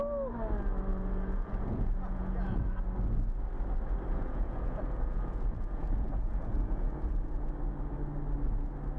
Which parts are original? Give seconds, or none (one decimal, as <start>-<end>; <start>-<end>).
0.0-0.9; 2.6-4.1; 7.5-9.0